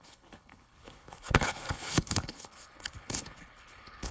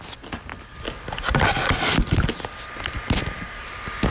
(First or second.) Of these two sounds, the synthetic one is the first